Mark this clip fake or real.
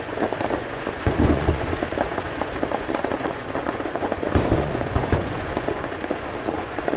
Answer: fake